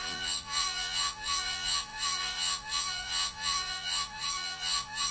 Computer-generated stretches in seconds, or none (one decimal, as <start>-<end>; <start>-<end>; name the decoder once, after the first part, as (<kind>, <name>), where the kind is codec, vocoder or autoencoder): 0.0-5.1 (vocoder, Vocos)